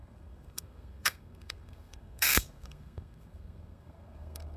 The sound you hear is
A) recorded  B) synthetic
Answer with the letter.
B